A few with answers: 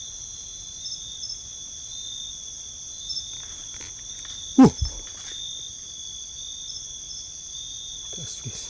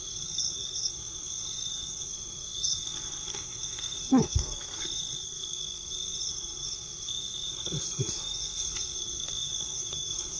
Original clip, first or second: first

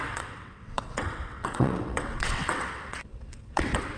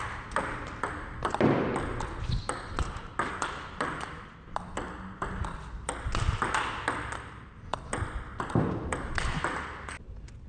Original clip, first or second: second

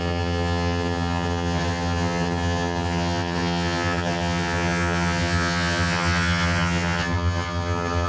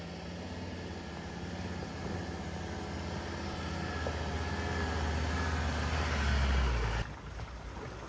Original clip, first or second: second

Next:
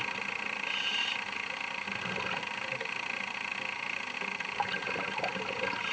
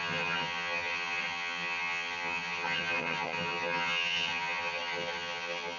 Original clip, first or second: first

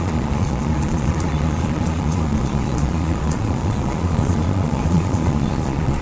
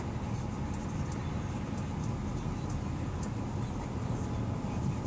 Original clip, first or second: second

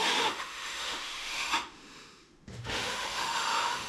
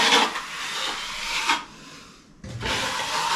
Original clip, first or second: second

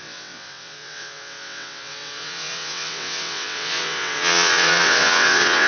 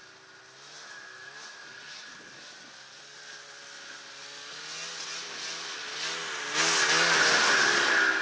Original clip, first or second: second